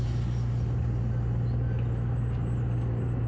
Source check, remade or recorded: recorded